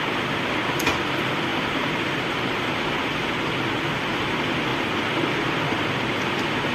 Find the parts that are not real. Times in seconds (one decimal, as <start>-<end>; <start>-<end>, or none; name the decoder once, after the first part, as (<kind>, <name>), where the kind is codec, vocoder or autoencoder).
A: 1.5-3.3 (vocoder, BigVGAN v2)